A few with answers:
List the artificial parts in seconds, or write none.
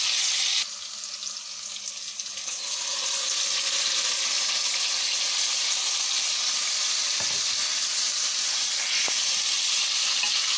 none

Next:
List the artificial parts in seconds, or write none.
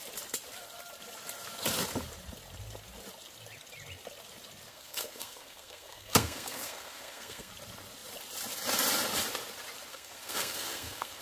4.7-7.5 (codec, SNAC); 9.9-11.2